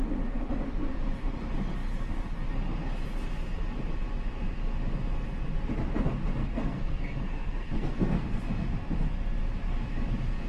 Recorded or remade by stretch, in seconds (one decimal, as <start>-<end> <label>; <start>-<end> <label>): 0.0-6.4 recorded; 6.4-8.4 remade; 8.4-10.5 recorded